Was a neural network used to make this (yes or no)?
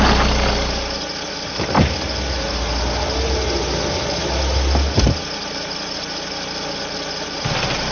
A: no